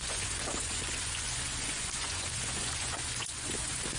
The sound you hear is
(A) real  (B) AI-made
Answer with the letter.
B